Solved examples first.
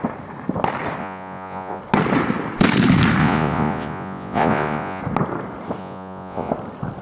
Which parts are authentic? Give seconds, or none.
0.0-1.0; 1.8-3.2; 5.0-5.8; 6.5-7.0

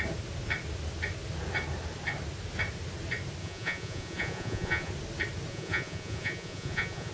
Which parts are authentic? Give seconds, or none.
0.0-3.4; 4.9-5.5